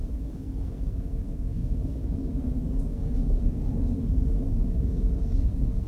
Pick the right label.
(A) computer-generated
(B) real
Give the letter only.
A